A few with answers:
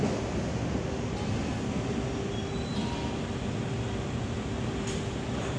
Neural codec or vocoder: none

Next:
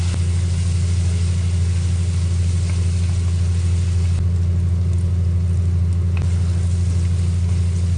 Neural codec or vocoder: none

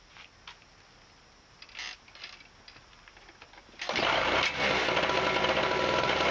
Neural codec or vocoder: none